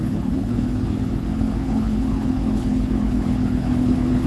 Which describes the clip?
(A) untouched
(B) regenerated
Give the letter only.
B